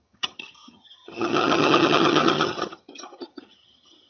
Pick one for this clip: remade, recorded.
remade